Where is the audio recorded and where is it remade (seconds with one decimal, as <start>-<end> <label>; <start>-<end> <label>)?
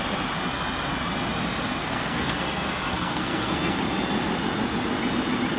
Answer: 0.0-1.8 recorded; 1.8-3.8 remade; 3.8-5.6 recorded